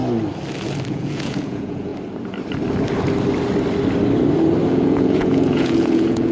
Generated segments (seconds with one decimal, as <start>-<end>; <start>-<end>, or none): 0.9-1.9; 4.7-6.3